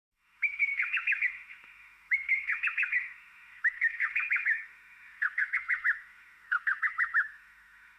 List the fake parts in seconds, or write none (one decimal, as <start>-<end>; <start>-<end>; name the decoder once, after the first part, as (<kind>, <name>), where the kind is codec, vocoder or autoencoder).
0.0-8.0 (autoencoder, DAC-VAE)